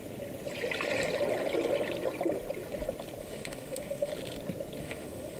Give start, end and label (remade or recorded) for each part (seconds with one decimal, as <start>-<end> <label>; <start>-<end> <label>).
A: 0.0-3.2 recorded; 3.2-4.1 remade; 4.1-4.8 recorded; 4.8-5.4 remade